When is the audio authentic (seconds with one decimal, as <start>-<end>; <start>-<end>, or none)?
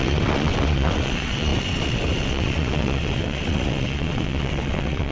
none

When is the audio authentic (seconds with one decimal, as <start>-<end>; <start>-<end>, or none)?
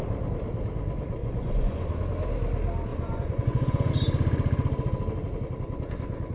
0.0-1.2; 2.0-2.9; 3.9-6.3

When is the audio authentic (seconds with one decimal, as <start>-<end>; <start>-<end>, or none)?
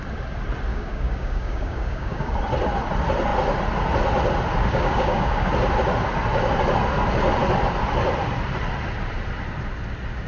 0.0-0.7; 2.3-4.6; 5.5-10.3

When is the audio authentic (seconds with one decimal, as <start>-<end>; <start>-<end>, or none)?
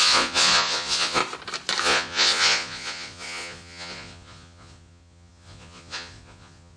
1.2-1.8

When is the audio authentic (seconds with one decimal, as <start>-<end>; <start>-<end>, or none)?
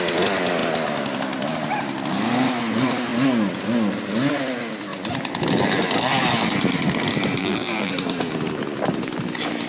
0.0-7.4; 7.9-9.7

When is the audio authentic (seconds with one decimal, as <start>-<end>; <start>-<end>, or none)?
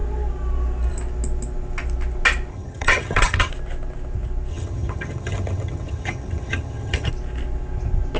0.0-2.5; 3.5-4.5; 7.1-8.2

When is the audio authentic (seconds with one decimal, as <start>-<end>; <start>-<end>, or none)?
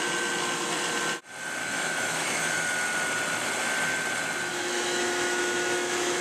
0.0-1.6; 2.5-4.5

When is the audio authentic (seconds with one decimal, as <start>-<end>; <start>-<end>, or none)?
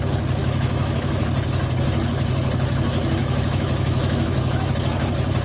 0.0-0.4; 1.2-3.2; 4.7-5.4